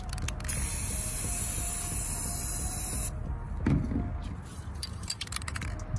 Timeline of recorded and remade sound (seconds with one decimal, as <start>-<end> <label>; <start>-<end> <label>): 0.0-4.5 recorded; 4.5-5.6 remade; 5.6-6.0 recorded